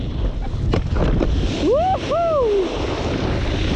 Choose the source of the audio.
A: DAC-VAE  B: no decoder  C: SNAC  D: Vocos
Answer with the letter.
B